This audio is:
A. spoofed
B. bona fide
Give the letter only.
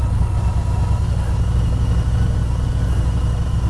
B